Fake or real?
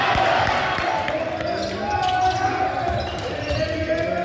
real